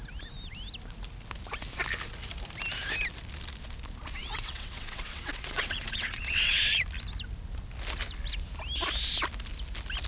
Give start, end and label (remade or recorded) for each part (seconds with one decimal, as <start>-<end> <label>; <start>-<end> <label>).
0.0-4.2 recorded; 4.2-6.8 remade; 6.8-10.1 recorded